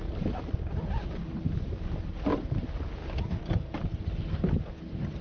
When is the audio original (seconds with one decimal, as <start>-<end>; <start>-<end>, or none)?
0.0-5.2